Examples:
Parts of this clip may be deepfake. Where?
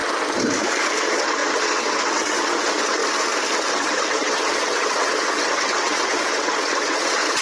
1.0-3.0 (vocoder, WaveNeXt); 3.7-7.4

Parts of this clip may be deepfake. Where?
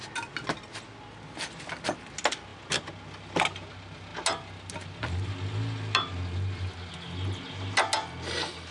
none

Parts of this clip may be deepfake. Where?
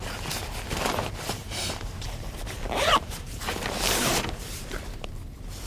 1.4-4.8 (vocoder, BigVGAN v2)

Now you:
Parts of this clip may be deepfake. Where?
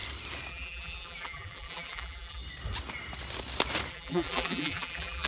0.5-2.4 (vocoder, BigVGAN v2); 3.9-5.3